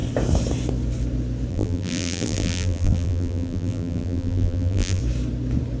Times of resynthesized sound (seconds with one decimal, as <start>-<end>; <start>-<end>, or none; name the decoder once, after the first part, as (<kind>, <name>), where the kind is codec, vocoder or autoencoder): 1.5-5.0 (vocoder, BigVGAN v2)